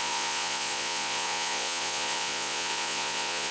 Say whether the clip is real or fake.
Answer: fake